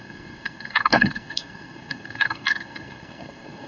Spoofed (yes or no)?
yes